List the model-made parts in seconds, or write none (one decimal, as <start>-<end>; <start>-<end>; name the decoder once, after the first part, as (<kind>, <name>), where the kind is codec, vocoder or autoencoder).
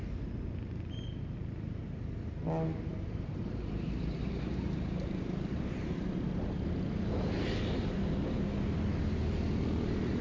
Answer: 2.9-6.7 (vocoder, BigVGAN v2)